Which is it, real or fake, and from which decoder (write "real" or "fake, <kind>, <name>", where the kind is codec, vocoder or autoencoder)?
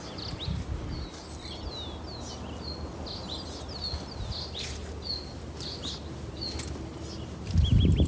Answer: real